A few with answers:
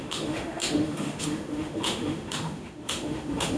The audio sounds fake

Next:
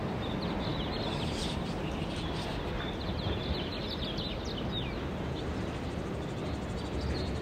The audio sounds real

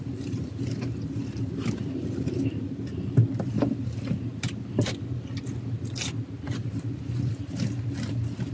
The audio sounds real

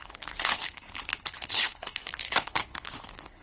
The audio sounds fake